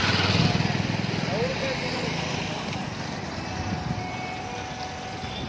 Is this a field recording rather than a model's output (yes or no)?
yes